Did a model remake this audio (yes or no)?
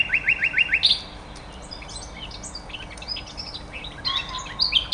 no